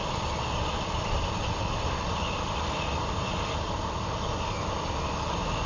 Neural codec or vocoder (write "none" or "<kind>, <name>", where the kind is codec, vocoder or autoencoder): none